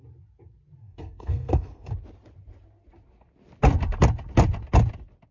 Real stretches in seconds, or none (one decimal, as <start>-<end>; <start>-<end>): 0.0-0.8; 1.9-5.3